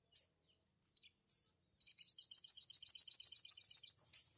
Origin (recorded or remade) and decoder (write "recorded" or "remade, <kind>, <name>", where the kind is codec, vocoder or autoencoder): recorded